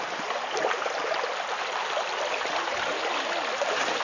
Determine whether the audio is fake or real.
real